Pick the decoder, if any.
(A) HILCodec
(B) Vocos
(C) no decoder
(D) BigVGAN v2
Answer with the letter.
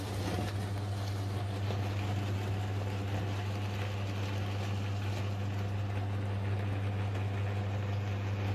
C